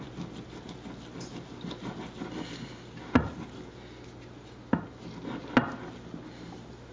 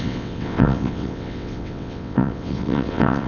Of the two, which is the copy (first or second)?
second